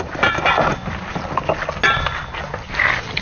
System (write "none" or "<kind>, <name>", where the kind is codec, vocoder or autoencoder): none